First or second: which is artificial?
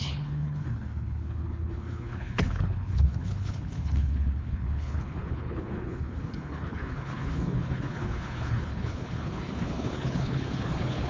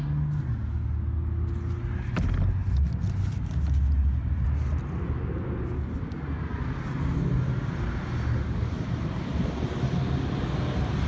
first